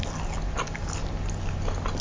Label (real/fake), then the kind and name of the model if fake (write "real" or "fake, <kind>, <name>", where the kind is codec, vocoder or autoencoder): real